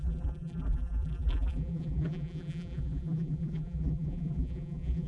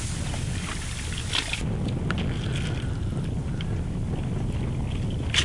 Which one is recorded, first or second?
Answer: second